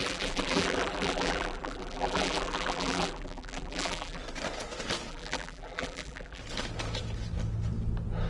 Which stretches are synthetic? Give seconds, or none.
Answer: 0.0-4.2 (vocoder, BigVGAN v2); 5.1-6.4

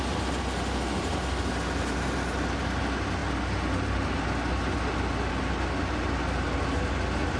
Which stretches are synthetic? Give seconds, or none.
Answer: none